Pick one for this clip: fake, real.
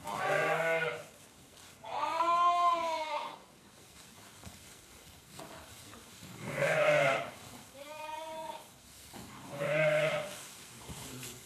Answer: fake